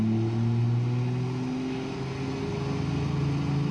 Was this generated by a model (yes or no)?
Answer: no